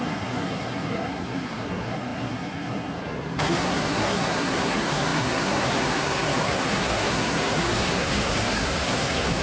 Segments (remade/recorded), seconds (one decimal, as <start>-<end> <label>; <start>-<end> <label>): 0.0-9.4 remade

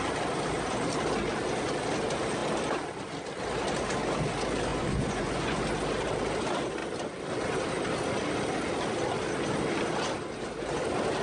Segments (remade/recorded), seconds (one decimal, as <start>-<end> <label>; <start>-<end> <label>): 0.0-4.7 recorded; 4.7-5.6 remade; 5.6-11.2 recorded

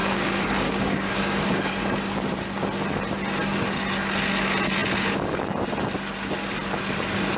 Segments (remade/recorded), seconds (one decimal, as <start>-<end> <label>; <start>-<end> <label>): 0.0-1.7 remade; 1.7-7.4 recorded

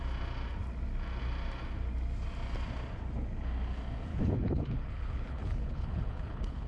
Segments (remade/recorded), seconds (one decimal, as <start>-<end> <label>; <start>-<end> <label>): 0.0-4.1 recorded; 4.1-6.7 remade

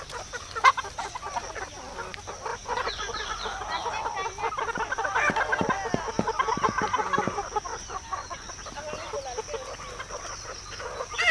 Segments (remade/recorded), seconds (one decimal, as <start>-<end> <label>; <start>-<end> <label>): 0.0-2.5 recorded; 2.5-3.4 remade; 3.4-7.7 recorded; 7.7-8.5 remade; 8.5-11.3 recorded

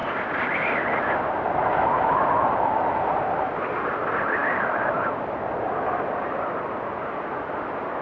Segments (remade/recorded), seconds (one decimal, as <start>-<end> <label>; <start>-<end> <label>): 0.0-8.0 recorded